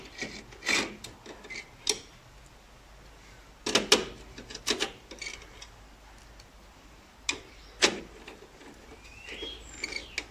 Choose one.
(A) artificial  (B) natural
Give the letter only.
B